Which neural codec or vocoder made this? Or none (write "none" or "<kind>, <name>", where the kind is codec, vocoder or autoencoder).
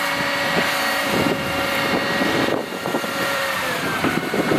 vocoder, BigVGAN v2